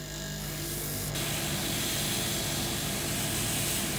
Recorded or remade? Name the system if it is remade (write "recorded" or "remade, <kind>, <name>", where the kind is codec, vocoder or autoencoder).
recorded